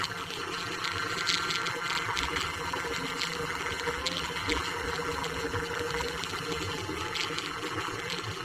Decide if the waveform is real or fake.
fake